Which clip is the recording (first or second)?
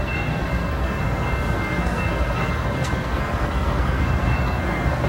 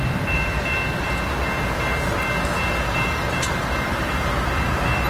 second